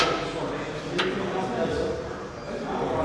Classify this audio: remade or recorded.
recorded